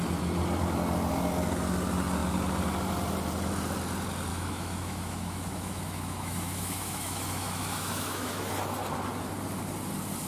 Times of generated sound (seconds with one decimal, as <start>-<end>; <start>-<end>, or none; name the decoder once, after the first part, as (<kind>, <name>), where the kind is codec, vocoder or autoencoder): 4.3-8.5 (autoencoder, DAC-VAE)